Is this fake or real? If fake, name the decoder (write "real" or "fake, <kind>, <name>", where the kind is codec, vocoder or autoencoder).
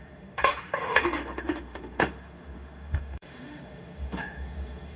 fake, autoencoder, DAC-VAE